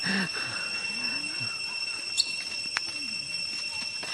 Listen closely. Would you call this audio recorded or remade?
recorded